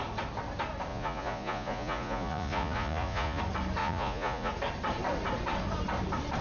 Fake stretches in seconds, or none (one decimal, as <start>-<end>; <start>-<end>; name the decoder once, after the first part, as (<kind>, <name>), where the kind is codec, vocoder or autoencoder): 0.9-3.4 (vocoder, Vocos); 3.8-4.5